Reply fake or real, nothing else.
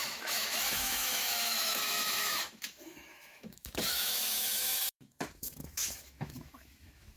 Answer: fake